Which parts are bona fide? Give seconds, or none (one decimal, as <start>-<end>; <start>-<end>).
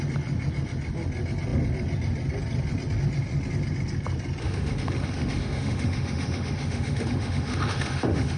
0.0-4.4